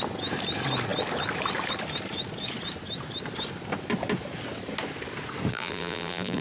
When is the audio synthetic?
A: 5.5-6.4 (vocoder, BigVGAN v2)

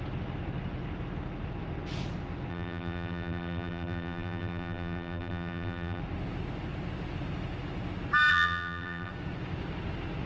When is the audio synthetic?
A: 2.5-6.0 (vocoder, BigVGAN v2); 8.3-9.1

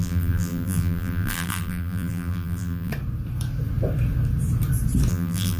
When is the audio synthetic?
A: 0.0-2.9 (vocoder, BigVGAN v2); 5.1-5.6

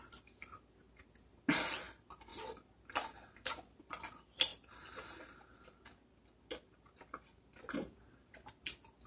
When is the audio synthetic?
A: none